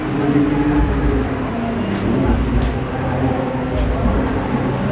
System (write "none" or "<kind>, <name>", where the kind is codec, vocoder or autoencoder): none